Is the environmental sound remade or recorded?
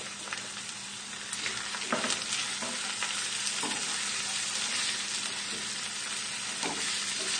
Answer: recorded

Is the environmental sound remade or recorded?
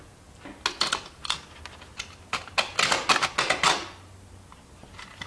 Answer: recorded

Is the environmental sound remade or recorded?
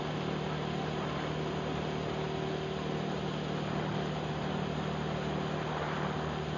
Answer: recorded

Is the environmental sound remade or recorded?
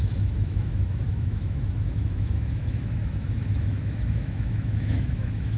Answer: remade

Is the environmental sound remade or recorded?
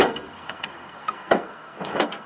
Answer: remade